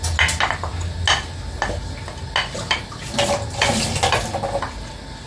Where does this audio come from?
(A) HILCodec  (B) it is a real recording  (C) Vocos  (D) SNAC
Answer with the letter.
B